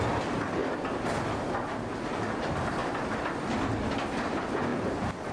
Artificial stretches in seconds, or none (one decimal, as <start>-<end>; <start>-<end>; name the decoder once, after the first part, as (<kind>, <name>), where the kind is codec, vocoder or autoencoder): 0.6-1.1 (vocoder, BigVGAN v2); 2.8-3.5